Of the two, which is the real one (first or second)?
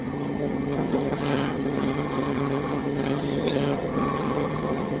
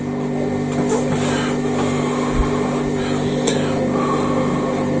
second